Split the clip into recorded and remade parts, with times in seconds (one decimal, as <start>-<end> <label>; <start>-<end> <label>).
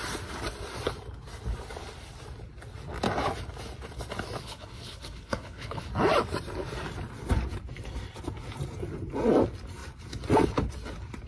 0.0-4.4 recorded; 4.4-5.9 remade; 5.9-11.3 recorded